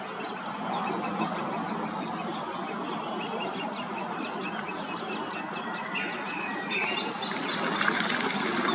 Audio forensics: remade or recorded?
recorded